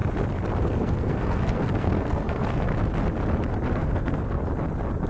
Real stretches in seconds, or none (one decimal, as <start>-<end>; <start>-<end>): 0.0-0.6; 2.7-3.7; 4.4-5.1